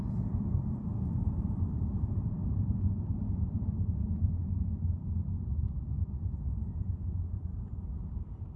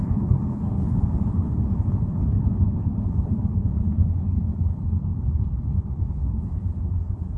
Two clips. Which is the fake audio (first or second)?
second